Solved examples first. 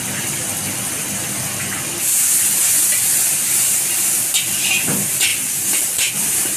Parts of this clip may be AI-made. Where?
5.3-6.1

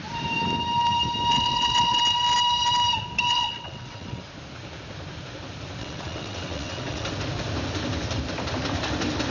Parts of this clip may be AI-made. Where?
1.3-2.0; 3.3-4.2; 5.8-7.1